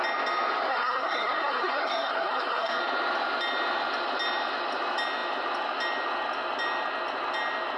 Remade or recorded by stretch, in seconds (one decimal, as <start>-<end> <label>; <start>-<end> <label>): 0.0-0.7 recorded; 0.7-2.8 remade; 2.8-7.8 recorded